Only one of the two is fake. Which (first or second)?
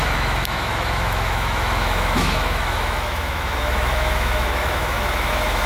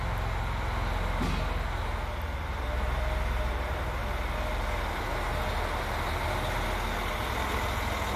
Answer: first